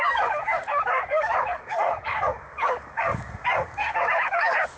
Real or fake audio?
fake